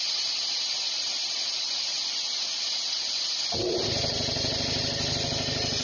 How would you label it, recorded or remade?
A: recorded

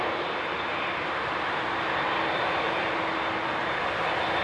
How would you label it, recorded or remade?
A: recorded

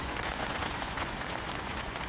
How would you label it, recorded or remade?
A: remade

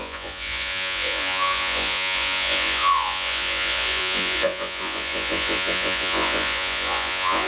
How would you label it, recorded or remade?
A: remade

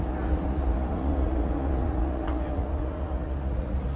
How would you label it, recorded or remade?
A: remade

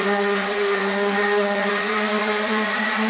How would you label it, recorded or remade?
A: remade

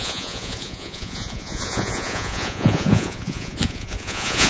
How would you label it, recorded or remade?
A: remade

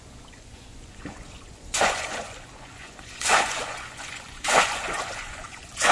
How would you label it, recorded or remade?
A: remade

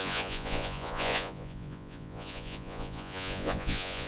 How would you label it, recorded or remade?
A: remade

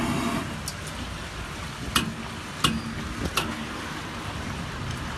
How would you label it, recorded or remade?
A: recorded